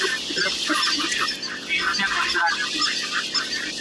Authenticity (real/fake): real